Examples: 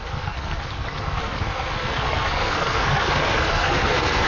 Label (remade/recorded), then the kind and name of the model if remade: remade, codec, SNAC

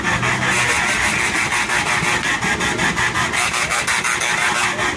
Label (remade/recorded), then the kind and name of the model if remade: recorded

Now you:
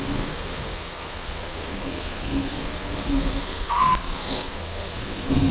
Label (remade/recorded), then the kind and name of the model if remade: remade, codec, SNAC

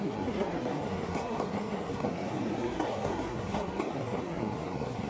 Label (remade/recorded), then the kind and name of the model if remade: remade, codec, SNAC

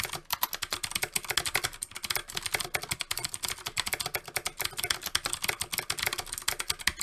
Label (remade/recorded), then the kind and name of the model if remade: recorded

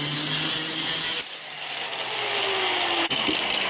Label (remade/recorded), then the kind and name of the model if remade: recorded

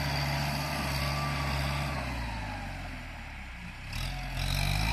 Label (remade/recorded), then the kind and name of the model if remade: recorded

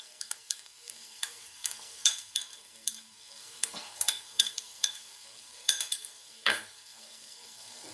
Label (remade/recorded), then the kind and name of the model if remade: remade, codec, SNAC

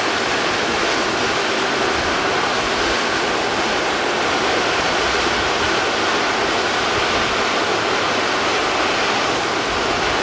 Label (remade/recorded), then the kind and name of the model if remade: recorded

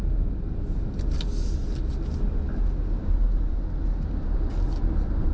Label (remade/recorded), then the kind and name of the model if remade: recorded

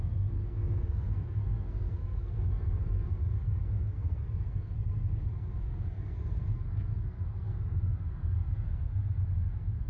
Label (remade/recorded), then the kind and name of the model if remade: remade, codec, SNAC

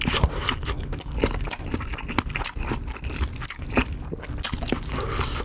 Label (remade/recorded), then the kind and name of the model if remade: recorded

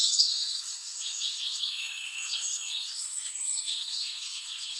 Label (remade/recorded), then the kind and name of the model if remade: remade, codec, SNAC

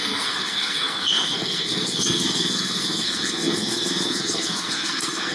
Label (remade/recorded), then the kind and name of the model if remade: remade, codec, SNAC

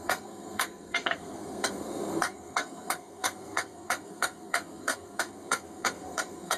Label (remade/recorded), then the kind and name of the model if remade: remade, codec, SNAC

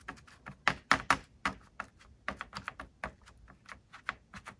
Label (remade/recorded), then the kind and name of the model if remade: recorded